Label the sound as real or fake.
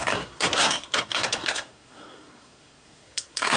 fake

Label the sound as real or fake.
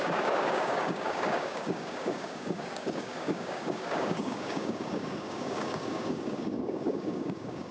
fake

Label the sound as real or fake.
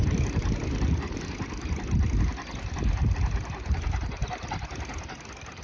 real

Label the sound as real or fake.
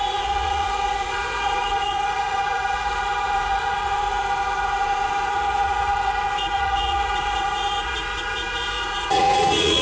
fake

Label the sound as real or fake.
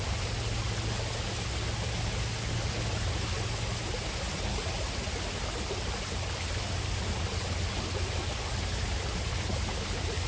real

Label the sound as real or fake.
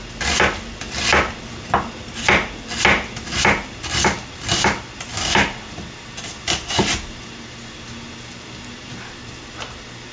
real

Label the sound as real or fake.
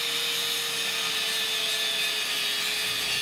real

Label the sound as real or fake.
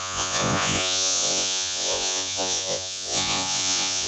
fake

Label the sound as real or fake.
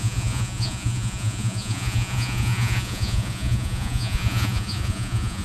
fake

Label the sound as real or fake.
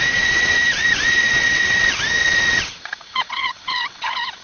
fake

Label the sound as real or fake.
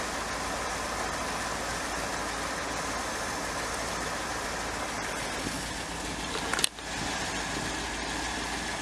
real